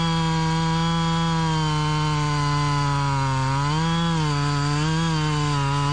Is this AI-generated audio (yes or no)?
no